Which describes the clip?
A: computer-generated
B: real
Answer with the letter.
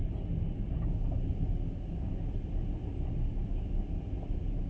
B